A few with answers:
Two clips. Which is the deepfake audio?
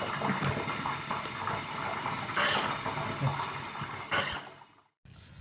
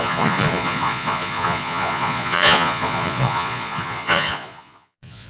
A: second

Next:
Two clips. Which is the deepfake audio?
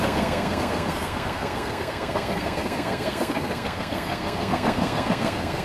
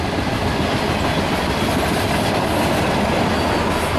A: first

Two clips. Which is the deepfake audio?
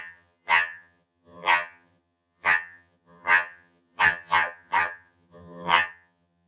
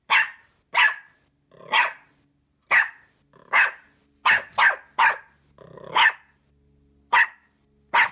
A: first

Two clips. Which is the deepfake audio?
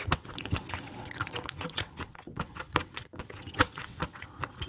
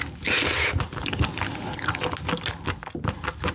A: first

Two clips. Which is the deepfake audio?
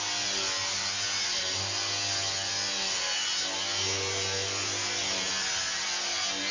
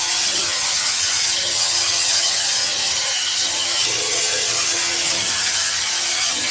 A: second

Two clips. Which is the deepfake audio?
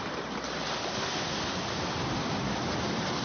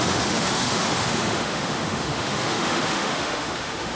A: second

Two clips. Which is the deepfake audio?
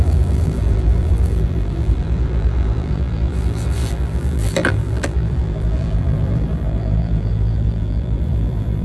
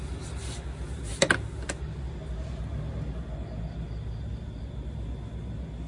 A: first